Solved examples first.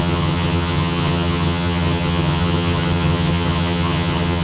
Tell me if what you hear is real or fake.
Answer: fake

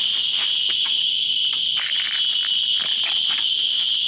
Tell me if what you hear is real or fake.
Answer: real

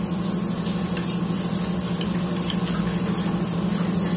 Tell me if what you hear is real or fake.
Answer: real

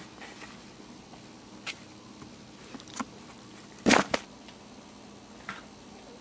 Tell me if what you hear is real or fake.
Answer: real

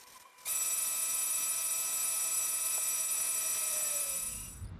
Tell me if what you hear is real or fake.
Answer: fake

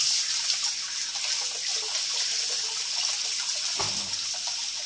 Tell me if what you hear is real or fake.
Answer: real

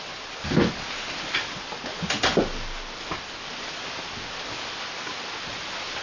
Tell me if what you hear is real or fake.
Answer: real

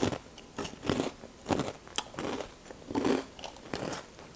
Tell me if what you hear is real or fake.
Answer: real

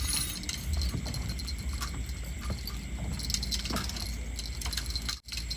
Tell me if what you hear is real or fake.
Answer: real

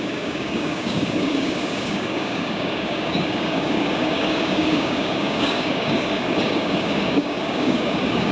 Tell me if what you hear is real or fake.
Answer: fake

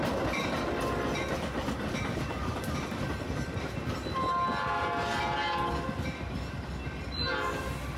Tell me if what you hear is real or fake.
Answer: real